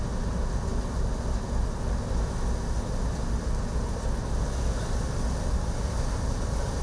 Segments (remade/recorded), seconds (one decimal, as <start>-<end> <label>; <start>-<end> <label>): 0.0-6.8 recorded